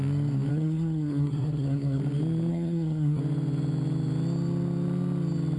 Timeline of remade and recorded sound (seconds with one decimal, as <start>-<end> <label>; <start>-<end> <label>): 0.0-0.5 recorded; 0.5-2.0 remade; 2.0-2.5 recorded; 2.5-3.2 remade; 3.2-5.6 recorded